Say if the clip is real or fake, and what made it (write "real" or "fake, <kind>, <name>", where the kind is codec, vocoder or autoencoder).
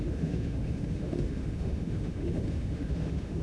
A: fake, autoencoder, DAC-VAE